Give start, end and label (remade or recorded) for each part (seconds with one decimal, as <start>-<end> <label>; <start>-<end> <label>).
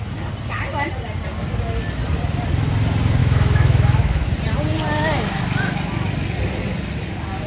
0.0-3.2 recorded; 3.2-4.3 remade; 4.3-7.5 recorded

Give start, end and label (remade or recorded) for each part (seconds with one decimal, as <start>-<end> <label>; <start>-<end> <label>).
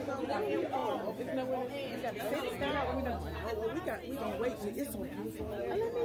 0.0-6.0 recorded